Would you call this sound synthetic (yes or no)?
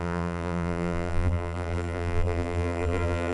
yes